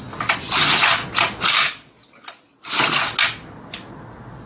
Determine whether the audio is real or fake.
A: real